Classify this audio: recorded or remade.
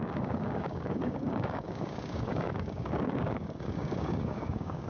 remade